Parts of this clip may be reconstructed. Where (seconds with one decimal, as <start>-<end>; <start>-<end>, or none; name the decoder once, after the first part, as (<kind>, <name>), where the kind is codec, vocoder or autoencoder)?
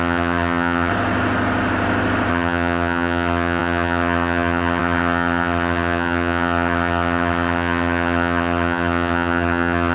0.0-0.9 (vocoder, HiFi-GAN); 2.3-9.9